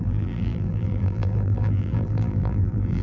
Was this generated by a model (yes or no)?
yes